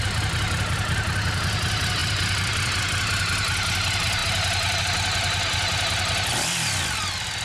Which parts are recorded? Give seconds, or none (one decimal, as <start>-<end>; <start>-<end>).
0.0-2.0; 2.8-7.4